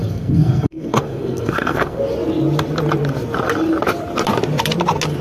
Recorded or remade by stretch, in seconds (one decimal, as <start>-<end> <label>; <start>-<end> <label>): 0.0-2.0 remade; 2.0-5.2 recorded